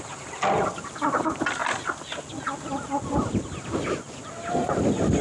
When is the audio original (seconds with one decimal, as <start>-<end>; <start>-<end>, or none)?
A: 0.0-5.2